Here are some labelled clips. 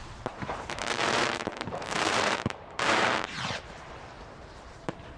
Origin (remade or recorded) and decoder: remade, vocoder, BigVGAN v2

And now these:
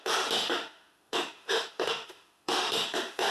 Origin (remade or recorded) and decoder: remade, autoencoder, DAC-VAE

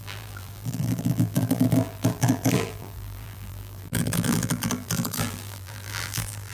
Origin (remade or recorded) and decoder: remade, vocoder, BigVGAN v2